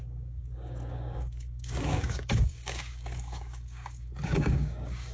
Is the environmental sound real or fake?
fake